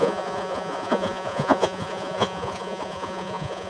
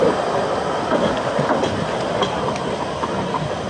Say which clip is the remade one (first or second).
first